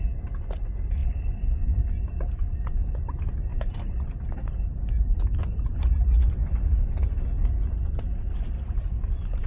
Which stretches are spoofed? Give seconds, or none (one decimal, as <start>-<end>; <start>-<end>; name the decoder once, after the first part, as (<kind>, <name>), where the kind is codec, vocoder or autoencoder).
3.5-6.4 (vocoder, BigVGAN v2)